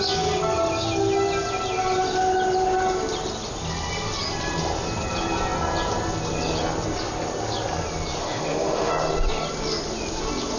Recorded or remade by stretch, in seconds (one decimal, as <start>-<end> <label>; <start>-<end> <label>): 0.0-8.2 recorded; 8.2-8.9 remade; 8.9-10.6 recorded